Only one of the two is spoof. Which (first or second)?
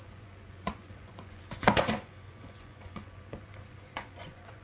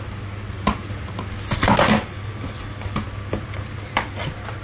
first